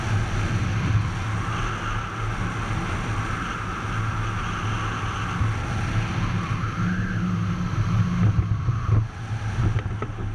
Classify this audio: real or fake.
real